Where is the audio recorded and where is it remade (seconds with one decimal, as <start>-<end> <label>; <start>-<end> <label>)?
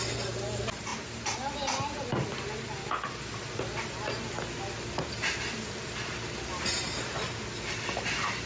0.0-8.5 recorded